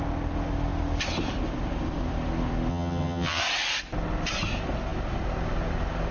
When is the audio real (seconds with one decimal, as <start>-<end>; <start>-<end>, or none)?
0.0-2.7; 3.4-6.1